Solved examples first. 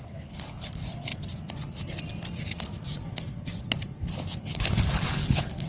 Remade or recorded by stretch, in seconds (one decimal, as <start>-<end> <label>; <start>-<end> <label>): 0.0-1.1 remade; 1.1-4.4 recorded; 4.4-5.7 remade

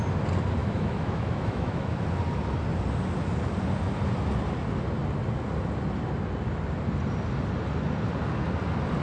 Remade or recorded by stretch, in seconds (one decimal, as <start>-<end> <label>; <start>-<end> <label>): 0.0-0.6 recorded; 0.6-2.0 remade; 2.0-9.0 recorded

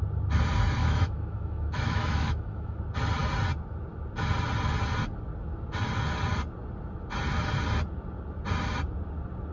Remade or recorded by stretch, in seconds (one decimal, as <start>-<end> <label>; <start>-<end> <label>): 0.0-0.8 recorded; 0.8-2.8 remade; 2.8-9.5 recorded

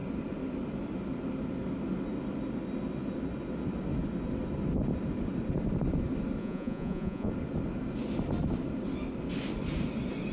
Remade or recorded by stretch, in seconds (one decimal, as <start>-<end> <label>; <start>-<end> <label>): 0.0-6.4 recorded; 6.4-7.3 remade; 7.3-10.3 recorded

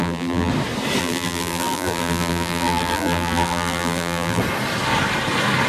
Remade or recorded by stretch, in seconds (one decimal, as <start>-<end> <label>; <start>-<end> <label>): 0.0-0.5 remade; 0.5-1.0 recorded; 1.0-4.4 remade; 4.4-5.7 recorded

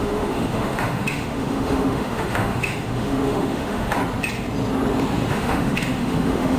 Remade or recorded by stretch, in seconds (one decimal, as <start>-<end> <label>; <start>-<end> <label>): 0.0-4.0 remade; 4.0-5.3 recorded; 5.3-6.6 remade